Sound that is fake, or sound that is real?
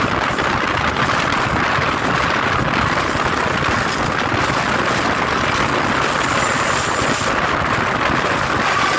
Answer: real